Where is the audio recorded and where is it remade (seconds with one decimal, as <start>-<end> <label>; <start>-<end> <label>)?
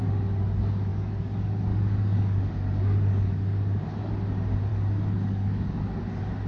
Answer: 0.0-0.9 recorded; 0.9-4.1 remade; 4.1-4.7 recorded; 4.7-6.0 remade; 6.0-6.5 recorded